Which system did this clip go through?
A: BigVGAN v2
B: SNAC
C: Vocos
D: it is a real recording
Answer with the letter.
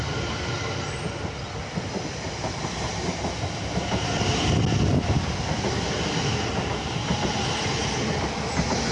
D